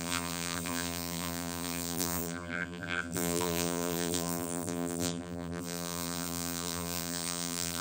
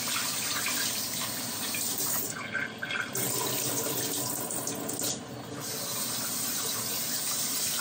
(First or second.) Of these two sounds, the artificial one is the first